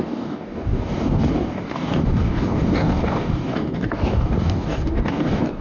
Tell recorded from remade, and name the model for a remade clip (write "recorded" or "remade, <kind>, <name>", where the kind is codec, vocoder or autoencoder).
remade, codec, DAC